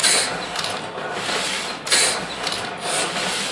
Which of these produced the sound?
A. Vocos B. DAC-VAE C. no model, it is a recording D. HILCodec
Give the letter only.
C